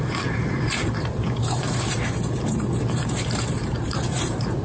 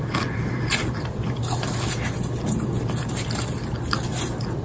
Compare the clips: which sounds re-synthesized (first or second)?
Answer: first